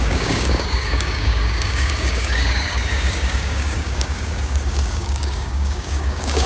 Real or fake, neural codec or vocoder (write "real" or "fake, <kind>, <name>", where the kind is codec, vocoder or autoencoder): fake, codec, DAC